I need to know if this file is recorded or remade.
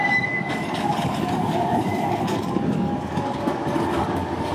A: remade